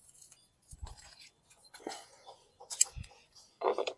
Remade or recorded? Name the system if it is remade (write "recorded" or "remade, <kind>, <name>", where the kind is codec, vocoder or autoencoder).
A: remade, vocoder, Vocos